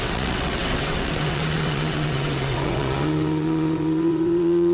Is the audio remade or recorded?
remade